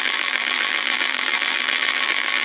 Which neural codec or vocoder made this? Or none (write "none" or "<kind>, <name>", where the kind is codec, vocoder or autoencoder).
vocoder, BigVGAN v2